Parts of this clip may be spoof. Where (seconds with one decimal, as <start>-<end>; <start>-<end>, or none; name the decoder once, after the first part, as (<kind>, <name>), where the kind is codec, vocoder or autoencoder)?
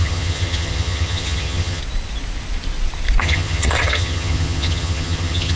0.0-1.8 (vocoder, HiFi-GAN); 3.2-5.6